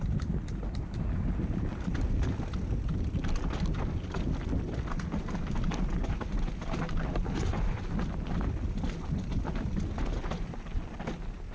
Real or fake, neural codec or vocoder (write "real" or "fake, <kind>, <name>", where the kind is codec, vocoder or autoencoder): real